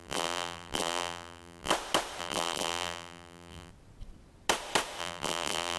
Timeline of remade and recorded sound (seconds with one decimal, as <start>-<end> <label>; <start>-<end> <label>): 0.0-1.7 remade; 1.7-2.2 recorded; 2.2-3.7 remade; 3.7-5.0 recorded; 5.0-5.8 remade